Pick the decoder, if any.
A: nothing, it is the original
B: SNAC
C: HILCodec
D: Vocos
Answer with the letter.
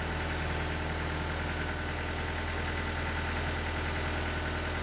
A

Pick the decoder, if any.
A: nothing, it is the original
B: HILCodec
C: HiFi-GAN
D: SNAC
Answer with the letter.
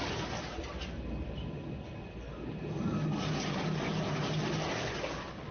A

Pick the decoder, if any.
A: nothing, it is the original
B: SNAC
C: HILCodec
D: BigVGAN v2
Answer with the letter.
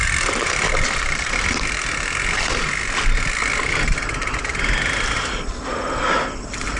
A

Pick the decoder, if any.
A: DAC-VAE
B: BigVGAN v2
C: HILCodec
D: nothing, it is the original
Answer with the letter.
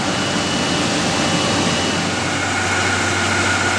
D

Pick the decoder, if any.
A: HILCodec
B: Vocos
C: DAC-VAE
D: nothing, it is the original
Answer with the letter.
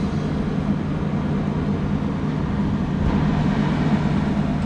D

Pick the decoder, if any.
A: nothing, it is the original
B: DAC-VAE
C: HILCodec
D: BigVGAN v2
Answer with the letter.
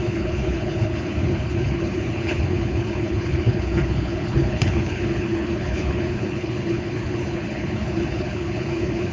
C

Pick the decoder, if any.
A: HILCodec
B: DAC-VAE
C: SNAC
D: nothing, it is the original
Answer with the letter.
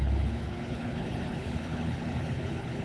A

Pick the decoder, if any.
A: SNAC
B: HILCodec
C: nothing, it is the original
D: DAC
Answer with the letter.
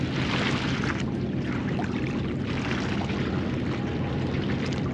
C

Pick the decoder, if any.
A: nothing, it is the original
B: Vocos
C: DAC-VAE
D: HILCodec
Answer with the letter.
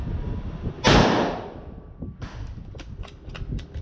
A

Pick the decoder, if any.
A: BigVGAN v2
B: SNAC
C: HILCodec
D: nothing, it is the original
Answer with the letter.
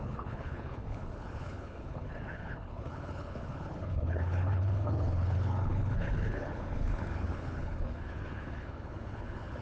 C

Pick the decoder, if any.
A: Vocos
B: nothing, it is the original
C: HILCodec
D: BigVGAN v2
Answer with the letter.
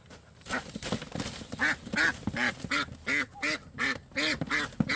B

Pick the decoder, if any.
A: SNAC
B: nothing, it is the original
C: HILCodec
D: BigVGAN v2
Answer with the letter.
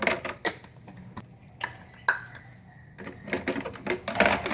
B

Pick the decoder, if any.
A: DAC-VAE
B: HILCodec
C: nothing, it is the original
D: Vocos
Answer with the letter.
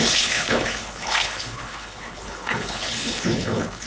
B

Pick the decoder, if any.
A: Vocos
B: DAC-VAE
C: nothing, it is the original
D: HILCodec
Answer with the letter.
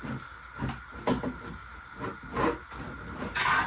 C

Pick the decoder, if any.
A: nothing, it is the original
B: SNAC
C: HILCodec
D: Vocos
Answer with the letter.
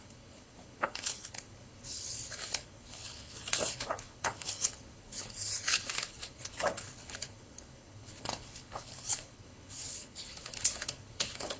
C